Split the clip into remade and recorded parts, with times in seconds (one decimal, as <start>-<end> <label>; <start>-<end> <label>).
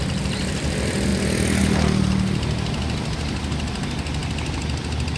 0.0-5.2 recorded